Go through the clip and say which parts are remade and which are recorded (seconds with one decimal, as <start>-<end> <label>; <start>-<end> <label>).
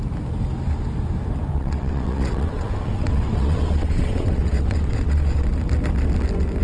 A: 0.0-1.5 recorded; 1.5-5.5 remade; 5.5-6.6 recorded